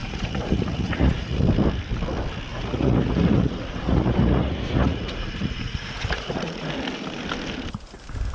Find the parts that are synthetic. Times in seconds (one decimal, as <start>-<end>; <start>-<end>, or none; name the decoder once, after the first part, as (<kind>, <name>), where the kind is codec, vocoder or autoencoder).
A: 0.0-1.4 (vocoder, Vocos); 2.5-6.7